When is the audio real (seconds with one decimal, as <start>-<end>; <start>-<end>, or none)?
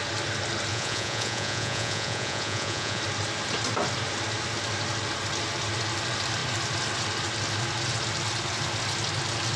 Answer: 0.0-0.7; 3.0-9.6